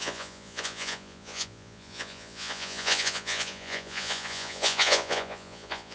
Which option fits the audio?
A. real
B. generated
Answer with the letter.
B